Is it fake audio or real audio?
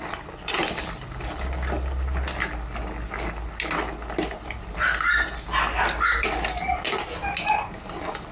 real